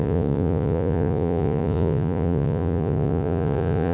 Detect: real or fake fake